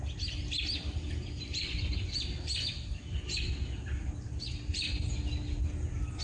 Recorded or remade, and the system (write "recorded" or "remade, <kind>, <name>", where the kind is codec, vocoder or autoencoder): recorded